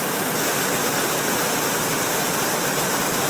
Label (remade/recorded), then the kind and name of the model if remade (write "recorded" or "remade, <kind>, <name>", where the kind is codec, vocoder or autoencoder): recorded